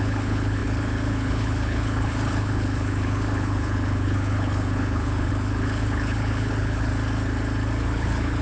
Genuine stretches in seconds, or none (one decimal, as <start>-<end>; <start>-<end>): 6.9-7.8